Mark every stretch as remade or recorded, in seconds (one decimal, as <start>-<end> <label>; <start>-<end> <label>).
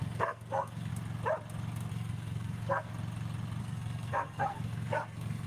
0.0-0.9 remade; 0.9-1.9 recorded; 1.9-2.9 remade; 2.9-3.6 recorded; 3.6-5.5 remade